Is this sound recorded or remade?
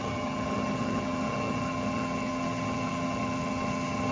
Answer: remade